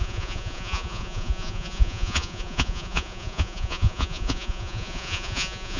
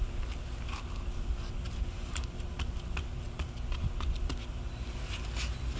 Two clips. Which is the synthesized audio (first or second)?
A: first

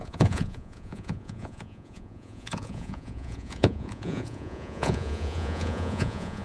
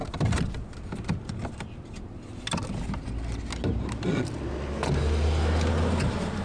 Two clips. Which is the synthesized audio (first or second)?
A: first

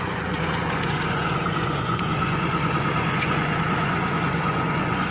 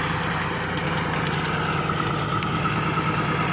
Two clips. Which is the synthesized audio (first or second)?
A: first